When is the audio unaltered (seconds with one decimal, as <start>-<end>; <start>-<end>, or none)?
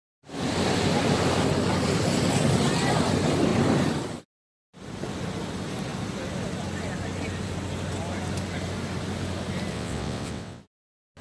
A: 0.0-9.7; 10.6-11.2